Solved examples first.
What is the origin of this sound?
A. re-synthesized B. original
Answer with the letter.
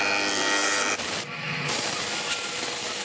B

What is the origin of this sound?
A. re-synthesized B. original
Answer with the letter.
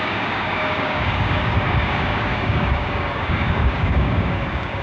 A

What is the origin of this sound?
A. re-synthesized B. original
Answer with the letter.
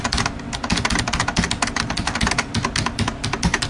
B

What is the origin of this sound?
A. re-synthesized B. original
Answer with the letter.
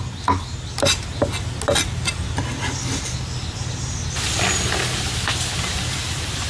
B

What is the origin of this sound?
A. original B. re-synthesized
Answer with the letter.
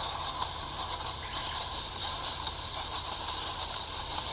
B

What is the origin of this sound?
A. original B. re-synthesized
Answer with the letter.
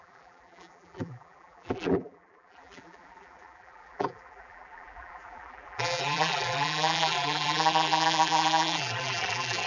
B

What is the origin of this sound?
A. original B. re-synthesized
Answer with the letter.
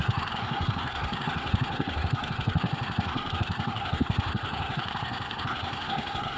B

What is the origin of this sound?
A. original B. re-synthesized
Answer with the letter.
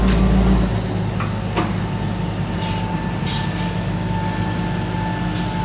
A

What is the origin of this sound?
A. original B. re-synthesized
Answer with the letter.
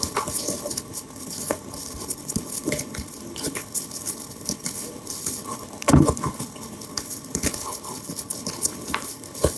B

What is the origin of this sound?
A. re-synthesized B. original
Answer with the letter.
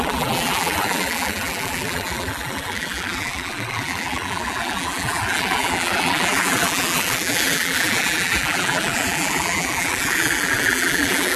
A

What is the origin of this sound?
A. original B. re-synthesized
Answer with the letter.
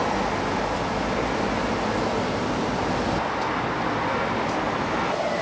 A